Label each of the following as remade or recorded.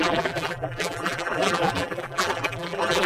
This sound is remade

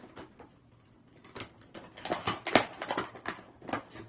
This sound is recorded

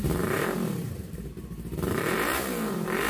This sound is remade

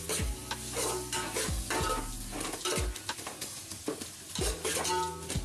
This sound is recorded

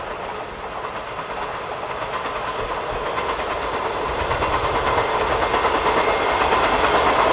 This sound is recorded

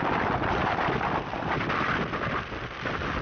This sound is recorded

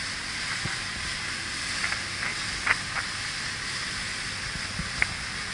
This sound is recorded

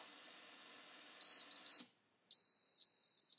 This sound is recorded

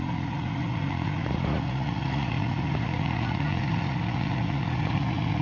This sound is remade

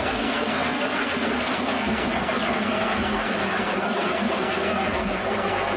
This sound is remade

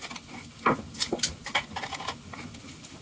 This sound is recorded